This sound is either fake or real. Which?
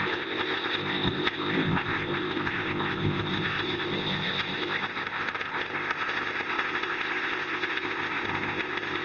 fake